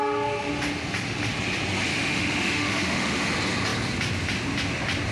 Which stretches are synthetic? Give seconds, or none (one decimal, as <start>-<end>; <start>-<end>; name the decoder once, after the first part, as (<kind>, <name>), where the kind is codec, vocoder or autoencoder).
1.9-3.3 (autoencoder, DAC-VAE)